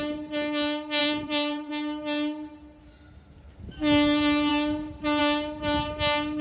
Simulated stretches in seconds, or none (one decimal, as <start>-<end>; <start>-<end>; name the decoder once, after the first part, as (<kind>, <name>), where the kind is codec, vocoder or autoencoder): 1.0-1.7 (vocoder, BigVGAN v2)

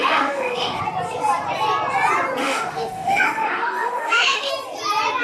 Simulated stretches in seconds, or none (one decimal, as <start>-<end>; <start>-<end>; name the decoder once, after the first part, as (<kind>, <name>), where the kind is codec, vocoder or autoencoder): 0.0-0.8 (autoencoder, DAC-VAE); 2.4-4.5

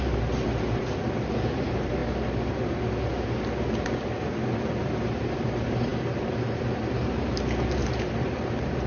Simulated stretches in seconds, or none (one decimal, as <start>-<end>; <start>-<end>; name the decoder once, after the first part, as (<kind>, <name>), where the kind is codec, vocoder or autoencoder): 0.0-2.0 (vocoder, BigVGAN v2); 4.7-8.9